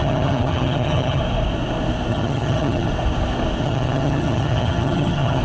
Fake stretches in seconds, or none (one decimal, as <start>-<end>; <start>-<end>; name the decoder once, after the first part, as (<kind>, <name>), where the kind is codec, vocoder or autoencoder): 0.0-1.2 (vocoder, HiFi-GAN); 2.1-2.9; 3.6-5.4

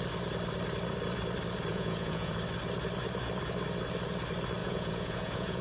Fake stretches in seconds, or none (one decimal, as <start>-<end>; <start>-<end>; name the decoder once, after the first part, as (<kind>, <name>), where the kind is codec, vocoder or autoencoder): 1.7-2.3 (vocoder, Vocos); 4.6-5.6

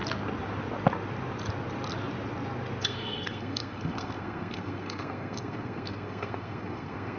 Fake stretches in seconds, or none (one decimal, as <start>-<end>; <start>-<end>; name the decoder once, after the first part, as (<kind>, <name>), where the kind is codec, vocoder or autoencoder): 2.8-7.2 (codec, SNAC)

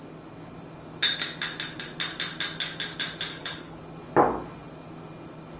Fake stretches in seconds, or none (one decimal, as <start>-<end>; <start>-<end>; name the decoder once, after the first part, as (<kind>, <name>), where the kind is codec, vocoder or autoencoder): 3.3-3.8 (codec, HILCodec)

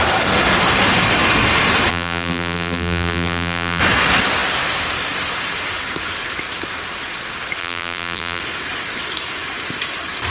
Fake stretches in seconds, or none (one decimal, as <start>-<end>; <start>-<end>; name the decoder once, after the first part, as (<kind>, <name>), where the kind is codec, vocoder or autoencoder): 1.9-3.8 (vocoder, BigVGAN v2); 7.6-8.4

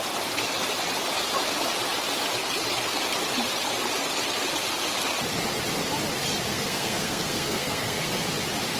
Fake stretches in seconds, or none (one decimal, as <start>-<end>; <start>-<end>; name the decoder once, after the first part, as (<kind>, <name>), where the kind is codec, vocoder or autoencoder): 6.5-8.2 (codec, SNAC)

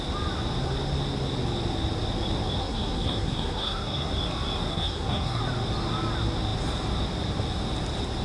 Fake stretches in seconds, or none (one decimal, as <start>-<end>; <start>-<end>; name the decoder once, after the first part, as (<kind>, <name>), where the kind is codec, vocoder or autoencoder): 2.6-4.1 (codec, SNAC); 4.7-5.4